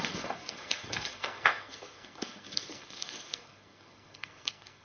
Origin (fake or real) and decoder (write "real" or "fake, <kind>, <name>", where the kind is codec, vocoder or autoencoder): fake, codec, SNAC